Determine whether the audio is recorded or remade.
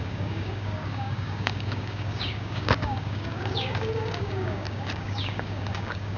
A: remade